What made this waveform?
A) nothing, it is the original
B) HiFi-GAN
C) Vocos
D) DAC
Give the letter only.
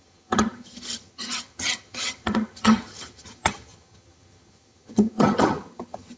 B